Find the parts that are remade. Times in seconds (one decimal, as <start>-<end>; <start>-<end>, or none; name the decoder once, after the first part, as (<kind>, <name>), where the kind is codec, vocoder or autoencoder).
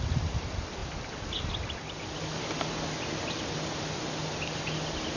none